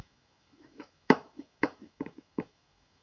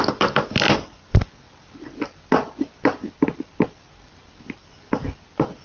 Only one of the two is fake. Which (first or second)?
first